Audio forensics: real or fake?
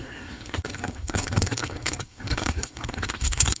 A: fake